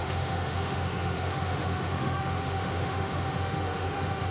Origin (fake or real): fake